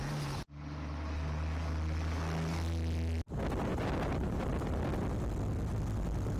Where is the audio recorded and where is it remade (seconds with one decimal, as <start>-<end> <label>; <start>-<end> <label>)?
0.0-3.7 recorded; 3.7-4.8 remade; 4.8-6.4 recorded